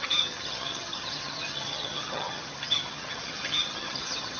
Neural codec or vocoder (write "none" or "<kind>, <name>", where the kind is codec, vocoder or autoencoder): vocoder, HiFi-GAN